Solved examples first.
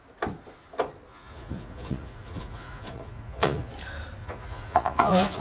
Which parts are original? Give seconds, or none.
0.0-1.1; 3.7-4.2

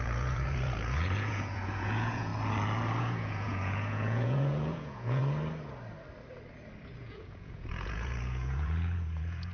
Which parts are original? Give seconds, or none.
2.3-3.0; 5.2-7.0

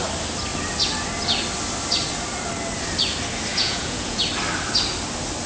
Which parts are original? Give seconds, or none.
0.0-3.5; 4.2-5.5

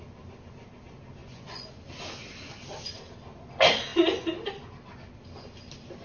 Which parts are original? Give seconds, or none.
0.0-1.2; 1.7-6.0

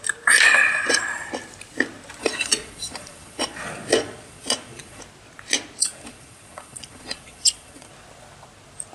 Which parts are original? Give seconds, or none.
0.0-0.6; 1.3-2.2; 5.0-5.8; 7.9-8.9

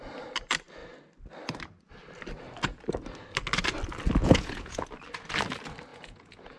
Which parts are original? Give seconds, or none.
0.0-4.2; 4.8-5.9

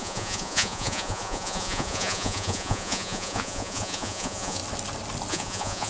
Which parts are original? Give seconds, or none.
4.6-5.3